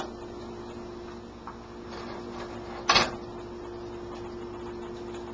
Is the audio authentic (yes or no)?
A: yes